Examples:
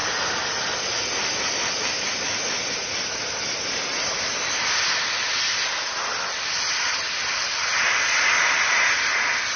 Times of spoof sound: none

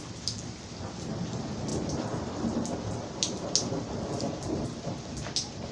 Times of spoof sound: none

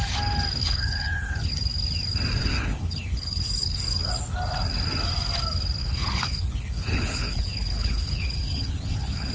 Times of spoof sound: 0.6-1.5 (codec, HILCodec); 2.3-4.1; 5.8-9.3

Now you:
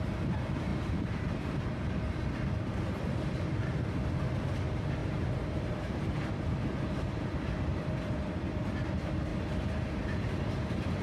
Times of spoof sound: 0.7-2.2 (vocoder, BigVGAN v2); 5.0-6.3; 9.3-11.0